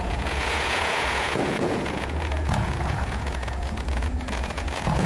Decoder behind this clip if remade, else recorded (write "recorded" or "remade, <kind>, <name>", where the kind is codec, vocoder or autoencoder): remade, vocoder, Vocos